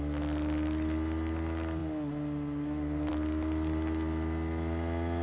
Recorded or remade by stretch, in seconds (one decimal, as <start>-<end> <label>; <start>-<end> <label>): 0.0-5.2 recorded